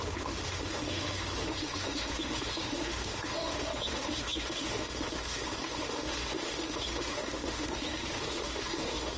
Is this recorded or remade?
remade